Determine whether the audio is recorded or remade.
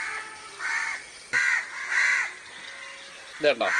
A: recorded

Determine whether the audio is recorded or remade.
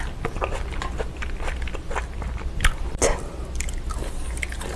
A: recorded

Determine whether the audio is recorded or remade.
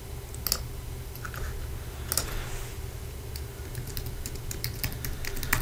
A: recorded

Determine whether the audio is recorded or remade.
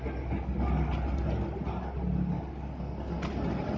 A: recorded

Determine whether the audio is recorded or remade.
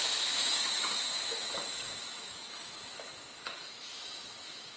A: remade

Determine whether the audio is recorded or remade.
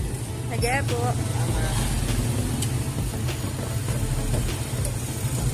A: recorded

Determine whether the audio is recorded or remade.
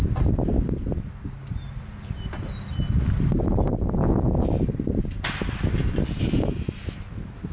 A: recorded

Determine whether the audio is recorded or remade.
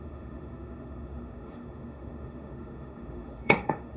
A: remade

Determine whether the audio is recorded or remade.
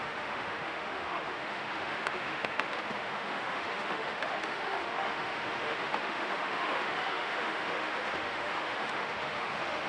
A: remade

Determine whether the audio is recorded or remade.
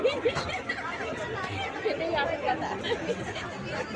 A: recorded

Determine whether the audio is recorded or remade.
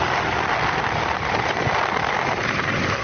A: recorded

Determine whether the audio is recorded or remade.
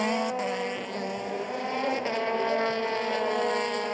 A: recorded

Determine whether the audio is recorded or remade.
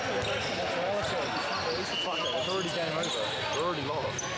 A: recorded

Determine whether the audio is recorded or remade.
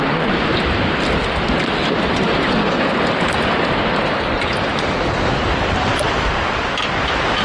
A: recorded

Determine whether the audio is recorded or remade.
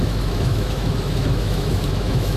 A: remade